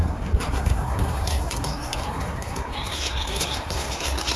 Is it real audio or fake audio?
fake